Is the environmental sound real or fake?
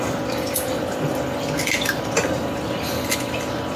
real